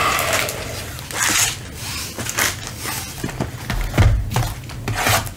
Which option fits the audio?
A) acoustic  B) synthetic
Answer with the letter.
A